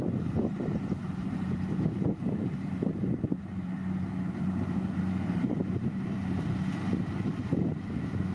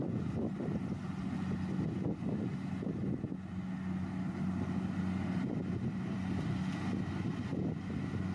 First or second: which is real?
second